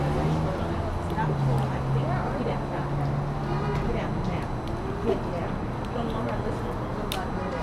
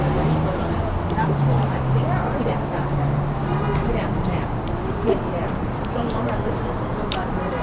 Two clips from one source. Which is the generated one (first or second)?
second